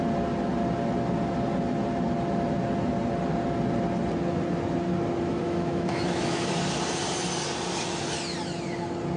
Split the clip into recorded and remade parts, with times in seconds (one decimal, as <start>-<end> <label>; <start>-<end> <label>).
0.0-5.3 recorded; 5.3-6.5 remade; 6.5-9.2 recorded